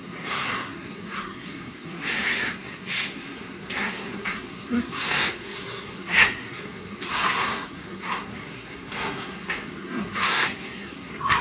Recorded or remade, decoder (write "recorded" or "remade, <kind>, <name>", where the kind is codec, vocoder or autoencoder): remade, codec, SNAC